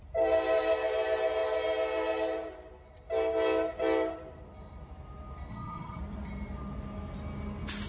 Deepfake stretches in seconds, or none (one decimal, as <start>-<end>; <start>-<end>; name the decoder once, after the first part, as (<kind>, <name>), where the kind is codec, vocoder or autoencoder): 5.5-6.0 (vocoder, HiFi-GAN)